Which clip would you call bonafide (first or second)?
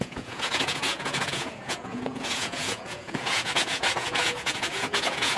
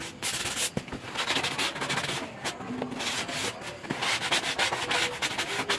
second